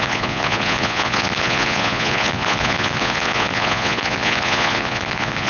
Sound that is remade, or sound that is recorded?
remade